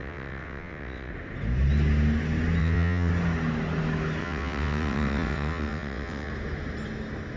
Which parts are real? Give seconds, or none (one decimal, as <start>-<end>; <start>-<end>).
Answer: 1.1-2.6; 3.1-4.2; 6.3-7.4